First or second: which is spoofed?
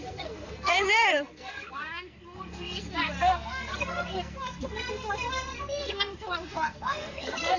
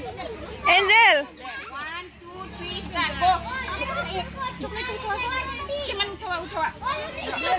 first